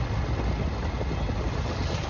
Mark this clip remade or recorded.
recorded